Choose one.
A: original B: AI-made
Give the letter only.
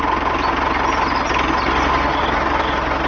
A